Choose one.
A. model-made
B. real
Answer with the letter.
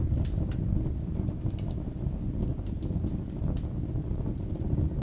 B